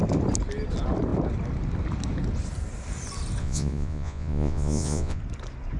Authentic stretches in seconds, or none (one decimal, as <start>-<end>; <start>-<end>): 0.0-3.4; 5.2-5.8